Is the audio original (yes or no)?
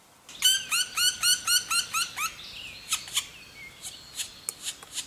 yes